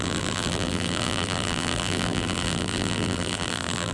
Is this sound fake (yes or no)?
yes